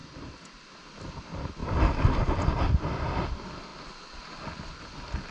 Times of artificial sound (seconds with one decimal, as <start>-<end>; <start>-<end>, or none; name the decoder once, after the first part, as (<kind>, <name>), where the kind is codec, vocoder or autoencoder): none